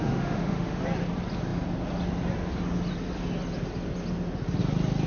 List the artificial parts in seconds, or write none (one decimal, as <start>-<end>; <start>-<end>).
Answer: 0.0-0.8